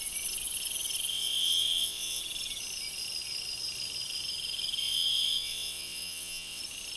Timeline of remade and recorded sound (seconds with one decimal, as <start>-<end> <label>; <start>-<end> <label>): 0.0-1.1 recorded; 1.1-2.2 remade; 2.2-4.8 recorded; 4.8-6.6 remade; 6.6-7.0 recorded